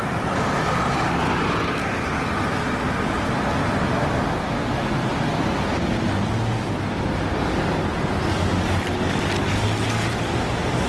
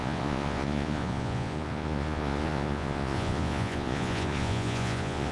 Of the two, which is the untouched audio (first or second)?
first